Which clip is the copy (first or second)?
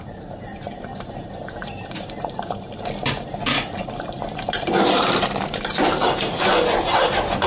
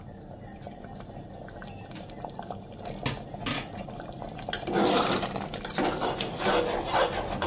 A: first